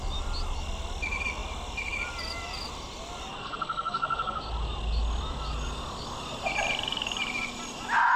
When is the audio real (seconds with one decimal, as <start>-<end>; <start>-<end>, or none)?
0.0-3.4; 4.4-8.2